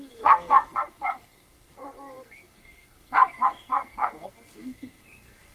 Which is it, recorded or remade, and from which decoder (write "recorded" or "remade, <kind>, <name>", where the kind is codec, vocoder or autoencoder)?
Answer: remade, codec, SNAC